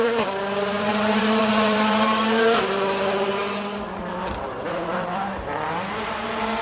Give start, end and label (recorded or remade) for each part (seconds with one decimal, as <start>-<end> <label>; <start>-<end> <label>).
0.0-3.4 remade; 3.4-4.4 recorded; 4.4-6.6 remade

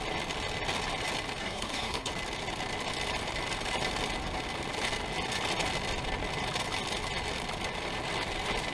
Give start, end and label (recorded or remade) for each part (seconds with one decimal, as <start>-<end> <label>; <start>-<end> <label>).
0.0-1.4 recorded; 1.4-2.1 remade; 2.1-8.7 recorded